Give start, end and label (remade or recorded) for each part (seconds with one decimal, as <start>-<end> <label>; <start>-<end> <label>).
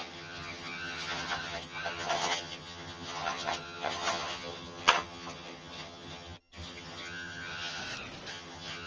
0.0-7.8 remade; 7.8-8.3 recorded; 8.3-8.9 remade